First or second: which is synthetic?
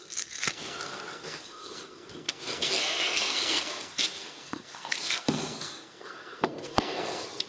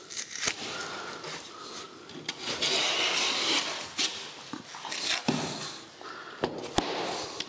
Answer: first